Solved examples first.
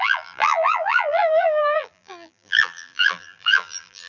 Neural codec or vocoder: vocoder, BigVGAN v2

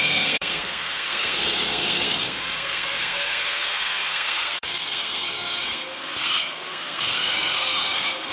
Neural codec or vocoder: codec, SNAC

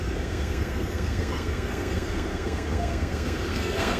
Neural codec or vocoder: codec, SNAC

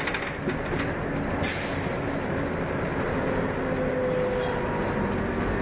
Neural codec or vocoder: none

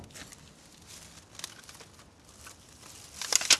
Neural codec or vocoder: none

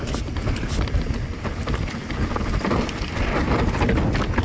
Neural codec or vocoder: none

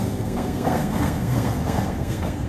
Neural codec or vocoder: codec, SNAC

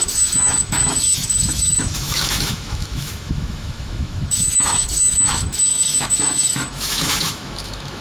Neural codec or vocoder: autoencoder, DAC-VAE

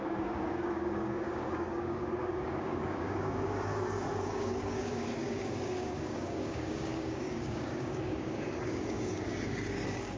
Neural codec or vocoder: codec, DAC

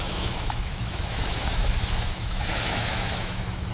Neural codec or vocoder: autoencoder, DAC-VAE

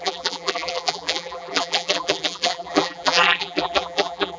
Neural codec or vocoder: vocoder, BigVGAN v2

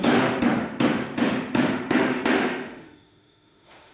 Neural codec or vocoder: autoencoder, DAC-VAE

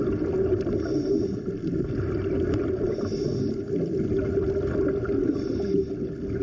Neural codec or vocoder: none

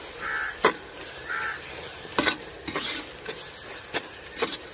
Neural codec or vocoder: none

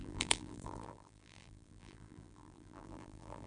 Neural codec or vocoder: vocoder, BigVGAN v2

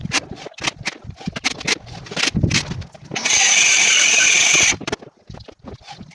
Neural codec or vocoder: none